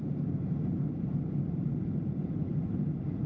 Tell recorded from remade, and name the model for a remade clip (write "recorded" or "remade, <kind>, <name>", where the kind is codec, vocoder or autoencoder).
remade, vocoder, BigVGAN v2